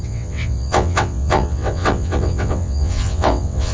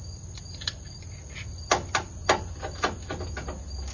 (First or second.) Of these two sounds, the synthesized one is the first